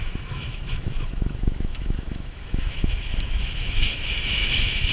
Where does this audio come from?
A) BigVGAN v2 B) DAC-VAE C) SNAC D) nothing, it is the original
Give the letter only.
B